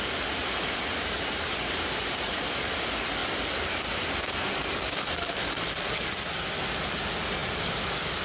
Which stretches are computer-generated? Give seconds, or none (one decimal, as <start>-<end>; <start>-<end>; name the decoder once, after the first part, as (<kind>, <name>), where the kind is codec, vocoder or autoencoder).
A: 0.4-1.2 (vocoder, BigVGAN v2); 3.2-6.1; 7.4-8.2